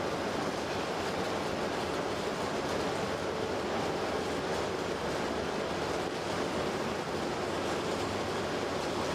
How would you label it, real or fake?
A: real